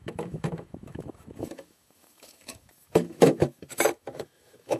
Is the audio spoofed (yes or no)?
yes